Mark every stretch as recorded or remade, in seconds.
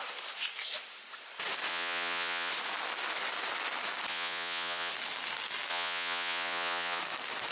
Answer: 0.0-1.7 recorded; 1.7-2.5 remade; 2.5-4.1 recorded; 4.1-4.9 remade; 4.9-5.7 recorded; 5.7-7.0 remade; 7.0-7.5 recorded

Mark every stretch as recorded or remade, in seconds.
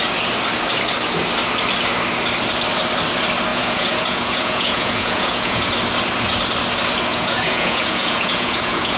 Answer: 0.0-3.5 recorded; 3.5-5.7 remade; 5.7-7.1 recorded; 7.1-9.0 remade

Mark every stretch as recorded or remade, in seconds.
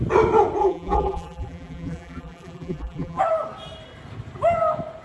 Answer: 0.0-0.6 recorded; 0.6-3.2 remade; 3.2-5.0 recorded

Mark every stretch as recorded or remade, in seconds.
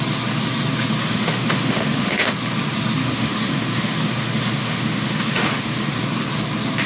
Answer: 0.0-1.0 recorded; 1.0-2.3 remade; 2.3-3.0 recorded; 3.0-6.0 remade; 6.0-6.9 recorded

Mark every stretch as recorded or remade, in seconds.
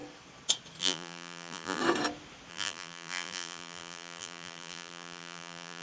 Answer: 0.0-0.8 recorded; 0.8-1.8 remade; 1.8-2.5 recorded; 2.5-5.8 remade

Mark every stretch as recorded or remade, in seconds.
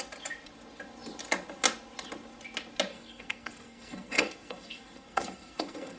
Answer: 0.0-2.9 recorded; 2.9-6.0 remade